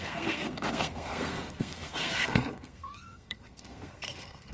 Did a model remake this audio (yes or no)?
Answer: yes